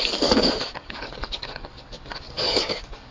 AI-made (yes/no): yes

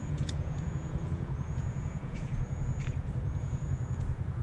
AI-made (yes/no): yes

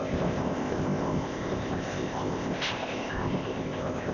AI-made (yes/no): yes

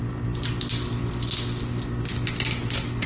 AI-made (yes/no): no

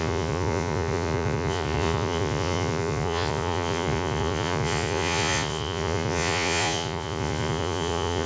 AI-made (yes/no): yes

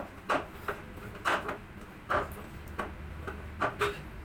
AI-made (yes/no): no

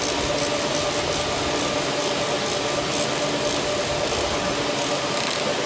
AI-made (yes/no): no